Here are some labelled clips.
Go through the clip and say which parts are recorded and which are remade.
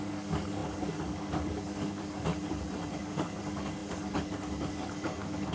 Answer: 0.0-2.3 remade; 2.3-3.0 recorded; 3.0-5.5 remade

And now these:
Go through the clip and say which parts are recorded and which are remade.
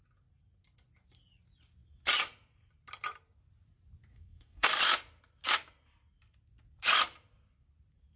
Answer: 0.0-4.1 recorded; 4.1-4.7 remade; 4.7-8.2 recorded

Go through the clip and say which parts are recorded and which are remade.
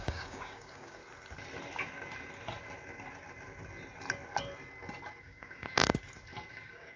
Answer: 0.0-1.0 remade; 1.0-5.2 recorded; 5.2-5.8 remade; 5.8-6.5 recorded; 6.5-7.0 remade